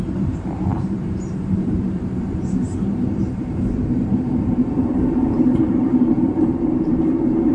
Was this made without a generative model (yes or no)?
no